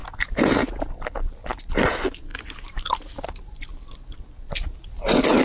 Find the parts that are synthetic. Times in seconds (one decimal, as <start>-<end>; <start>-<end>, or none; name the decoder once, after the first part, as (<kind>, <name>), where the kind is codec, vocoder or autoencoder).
none